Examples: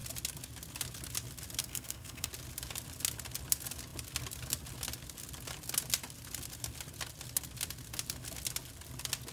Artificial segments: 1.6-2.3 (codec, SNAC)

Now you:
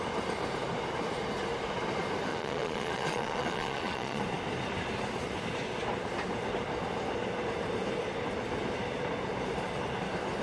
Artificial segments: 2.3-4.2 (vocoder, Vocos)

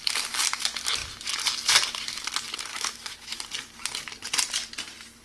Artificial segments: 2.7-3.4 (autoencoder, DAC-VAE)

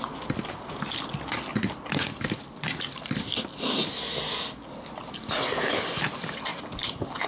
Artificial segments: none

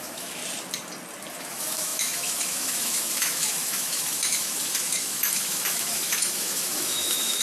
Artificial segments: 0.0-0.4 (autoencoder, DAC-VAE); 1.3-7.4